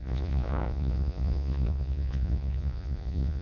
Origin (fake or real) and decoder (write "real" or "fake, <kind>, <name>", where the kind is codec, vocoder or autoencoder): fake, vocoder, Vocos